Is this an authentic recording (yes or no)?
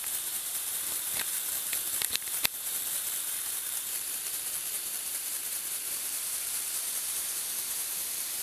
no